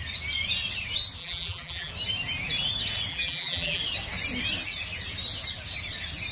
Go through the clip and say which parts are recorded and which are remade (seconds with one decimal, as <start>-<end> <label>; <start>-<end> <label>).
0.0-1.2 recorded; 1.2-1.9 remade; 1.9-3.1 recorded; 3.1-3.8 remade; 3.8-6.3 recorded